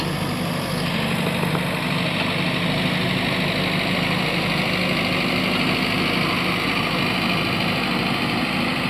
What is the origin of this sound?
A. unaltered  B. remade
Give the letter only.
A